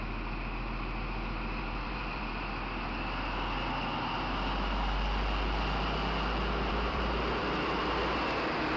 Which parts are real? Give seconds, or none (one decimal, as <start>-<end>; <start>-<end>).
0.0-1.6; 2.3-6.7